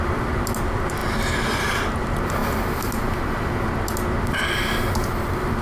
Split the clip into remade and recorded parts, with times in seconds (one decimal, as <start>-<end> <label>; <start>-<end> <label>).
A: 0.0-1.0 recorded; 1.0-1.8 remade; 1.8-2.4 recorded; 2.4-3.6 remade; 3.6-5.6 recorded